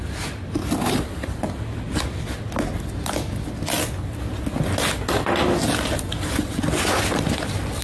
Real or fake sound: real